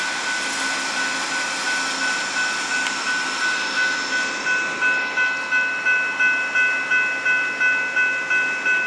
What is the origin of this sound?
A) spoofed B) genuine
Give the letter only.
B